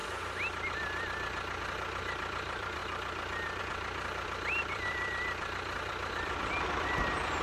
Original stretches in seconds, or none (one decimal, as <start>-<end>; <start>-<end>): 0.0-1.6; 2.8-3.6

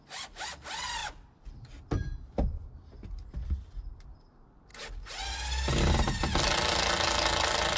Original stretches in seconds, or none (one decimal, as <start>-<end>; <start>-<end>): 0.0-7.8

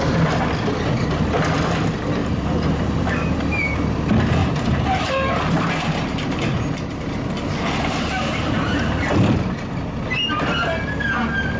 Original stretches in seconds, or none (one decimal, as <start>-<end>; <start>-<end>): 0.0-2.2; 3.7-4.4; 7.2-11.6

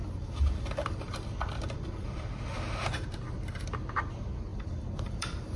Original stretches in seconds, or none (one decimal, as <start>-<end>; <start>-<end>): 2.4-4.5